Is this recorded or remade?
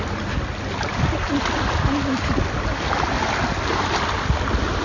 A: recorded